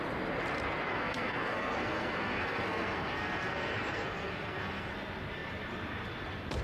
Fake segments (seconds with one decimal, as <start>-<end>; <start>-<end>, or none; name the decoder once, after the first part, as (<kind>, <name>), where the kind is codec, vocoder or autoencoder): 0.9-4.9 (codec, SNAC)